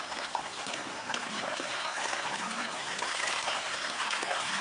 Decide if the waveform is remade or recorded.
remade